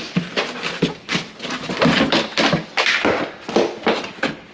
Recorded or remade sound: recorded